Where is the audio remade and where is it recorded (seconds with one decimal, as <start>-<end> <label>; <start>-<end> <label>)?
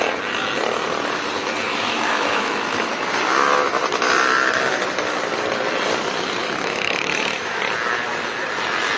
0.0-1.7 recorded; 1.7-2.9 remade; 2.9-6.4 recorded; 6.4-7.6 remade; 7.6-9.0 recorded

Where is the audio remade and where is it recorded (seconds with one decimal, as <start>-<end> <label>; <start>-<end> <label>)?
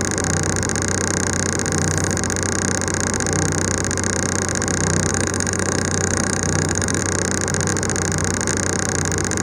0.0-5.1 recorded; 5.1-7.0 remade; 7.0-9.4 recorded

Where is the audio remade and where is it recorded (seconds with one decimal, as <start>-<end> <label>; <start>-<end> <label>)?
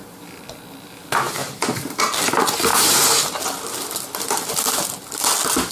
0.0-1.4 recorded; 1.4-2.0 remade; 2.0-2.7 recorded; 2.7-4.5 remade; 4.5-5.7 recorded